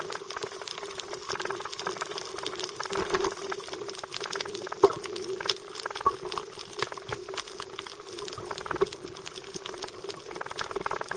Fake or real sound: real